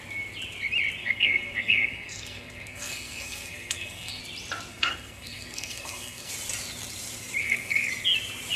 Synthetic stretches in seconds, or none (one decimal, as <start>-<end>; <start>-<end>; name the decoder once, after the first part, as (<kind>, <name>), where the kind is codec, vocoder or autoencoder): 1.0-4.2 (codec, SNAC); 4.7-6.3; 7.4-7.9